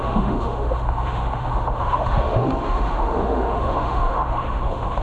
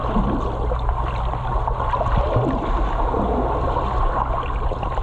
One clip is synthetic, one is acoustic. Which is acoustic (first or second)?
second